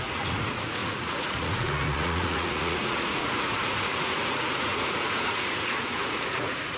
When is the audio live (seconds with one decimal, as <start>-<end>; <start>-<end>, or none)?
none